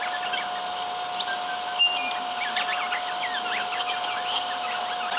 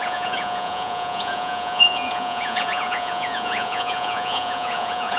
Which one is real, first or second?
first